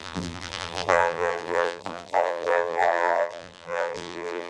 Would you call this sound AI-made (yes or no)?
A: yes